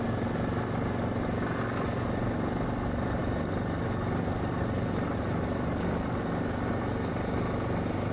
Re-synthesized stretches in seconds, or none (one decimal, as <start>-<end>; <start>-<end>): none